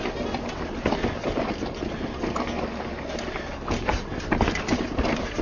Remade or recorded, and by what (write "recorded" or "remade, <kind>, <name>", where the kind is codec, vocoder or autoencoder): recorded